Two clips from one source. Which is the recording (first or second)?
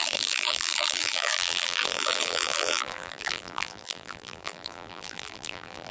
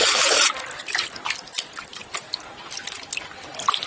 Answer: second